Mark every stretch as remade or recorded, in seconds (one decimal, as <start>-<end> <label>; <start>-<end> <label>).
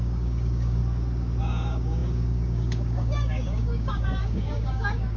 0.0-0.8 remade; 0.8-1.4 recorded; 1.4-5.2 remade